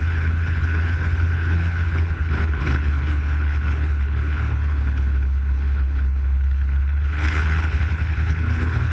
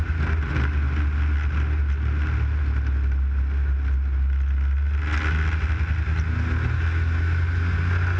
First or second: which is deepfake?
first